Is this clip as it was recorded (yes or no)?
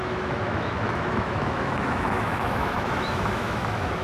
no